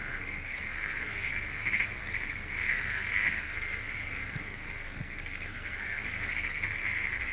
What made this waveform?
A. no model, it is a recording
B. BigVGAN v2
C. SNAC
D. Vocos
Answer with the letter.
C